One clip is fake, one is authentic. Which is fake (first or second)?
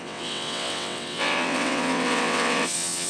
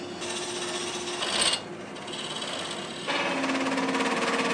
first